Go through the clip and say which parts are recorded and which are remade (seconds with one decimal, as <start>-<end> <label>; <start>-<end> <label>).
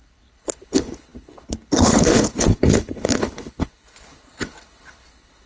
0.0-5.5 remade